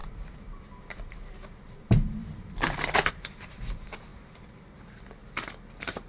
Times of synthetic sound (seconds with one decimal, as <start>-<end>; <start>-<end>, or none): 0.0-5.2